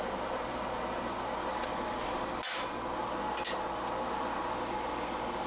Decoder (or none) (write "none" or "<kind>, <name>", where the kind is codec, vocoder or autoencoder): none